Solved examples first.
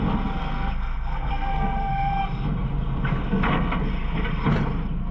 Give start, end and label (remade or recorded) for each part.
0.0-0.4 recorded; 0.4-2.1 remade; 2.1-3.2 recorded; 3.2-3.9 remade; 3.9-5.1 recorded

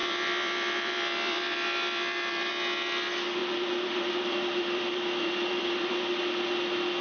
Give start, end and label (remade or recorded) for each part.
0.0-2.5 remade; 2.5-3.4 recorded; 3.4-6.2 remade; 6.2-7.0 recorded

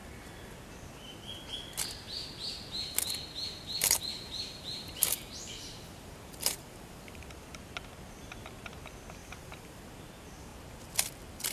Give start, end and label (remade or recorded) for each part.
0.0-3.8 recorded; 3.8-7.2 remade; 7.2-9.2 recorded; 9.2-9.8 remade; 9.8-11.5 recorded